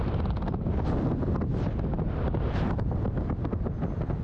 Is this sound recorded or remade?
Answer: recorded